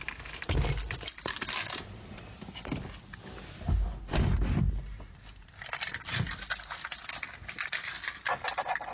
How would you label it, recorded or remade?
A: recorded